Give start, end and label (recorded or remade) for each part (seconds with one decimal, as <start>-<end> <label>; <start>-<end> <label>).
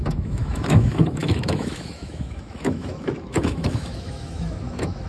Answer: 0.0-5.1 remade